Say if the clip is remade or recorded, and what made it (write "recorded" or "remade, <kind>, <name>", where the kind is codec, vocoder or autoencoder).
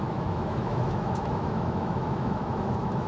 remade, autoencoder, DAC-VAE